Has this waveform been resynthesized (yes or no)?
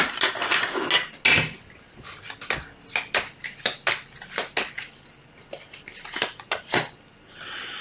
no